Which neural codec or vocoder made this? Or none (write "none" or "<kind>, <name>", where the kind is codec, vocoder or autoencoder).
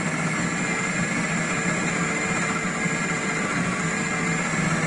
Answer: none